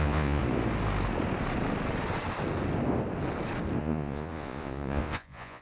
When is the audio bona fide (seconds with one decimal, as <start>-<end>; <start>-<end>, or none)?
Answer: 0.4-3.8